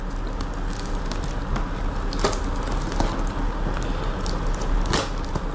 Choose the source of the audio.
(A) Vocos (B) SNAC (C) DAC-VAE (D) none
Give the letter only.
D